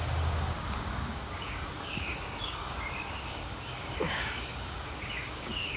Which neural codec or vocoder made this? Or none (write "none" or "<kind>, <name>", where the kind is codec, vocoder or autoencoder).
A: codec, DAC